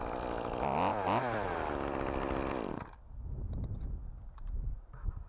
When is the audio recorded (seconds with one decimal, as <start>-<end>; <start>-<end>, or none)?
0.0-5.3